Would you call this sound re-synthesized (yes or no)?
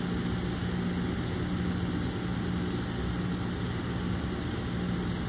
no